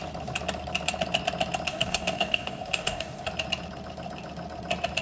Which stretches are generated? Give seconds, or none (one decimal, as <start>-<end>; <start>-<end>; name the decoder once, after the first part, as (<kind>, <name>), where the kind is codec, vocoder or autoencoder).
1.7-3.3 (codec, DAC)